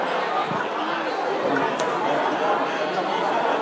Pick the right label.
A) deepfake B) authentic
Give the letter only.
A